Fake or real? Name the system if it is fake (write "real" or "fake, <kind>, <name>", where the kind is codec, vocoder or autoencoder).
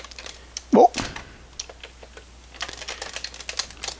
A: real